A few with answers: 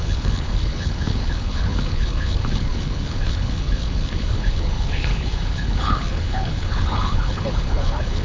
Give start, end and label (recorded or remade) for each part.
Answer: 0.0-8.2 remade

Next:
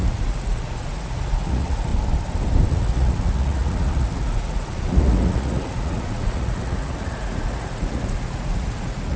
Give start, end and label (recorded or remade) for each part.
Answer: 0.0-1.9 remade; 1.9-2.7 recorded; 2.7-9.2 remade

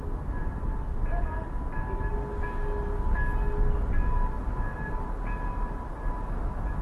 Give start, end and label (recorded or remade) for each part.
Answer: 0.0-6.8 recorded

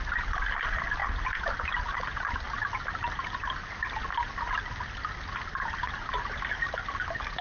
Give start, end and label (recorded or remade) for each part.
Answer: 0.0-7.4 recorded

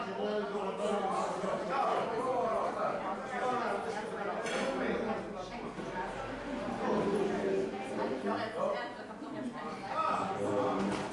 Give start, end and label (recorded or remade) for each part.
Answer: 0.0-0.9 recorded; 0.9-2.7 remade; 2.7-11.1 recorded